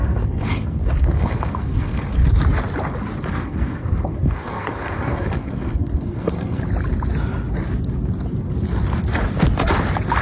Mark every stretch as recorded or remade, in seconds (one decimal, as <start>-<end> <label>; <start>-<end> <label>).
0.0-2.2 remade; 2.2-3.3 recorded; 3.3-6.6 remade; 6.6-10.2 recorded